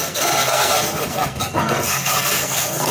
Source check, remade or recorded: remade